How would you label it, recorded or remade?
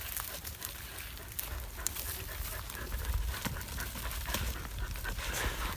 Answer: recorded